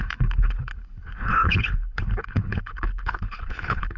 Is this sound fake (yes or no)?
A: yes